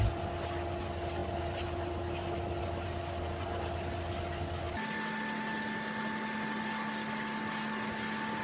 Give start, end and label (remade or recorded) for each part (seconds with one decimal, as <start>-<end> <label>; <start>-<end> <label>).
0.0-8.4 recorded